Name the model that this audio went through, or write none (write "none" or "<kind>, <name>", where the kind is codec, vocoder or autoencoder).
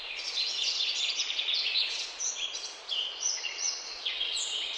vocoder, Vocos